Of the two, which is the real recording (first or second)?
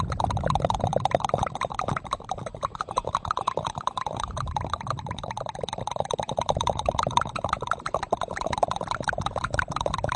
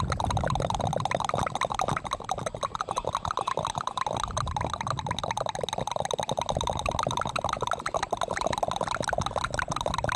second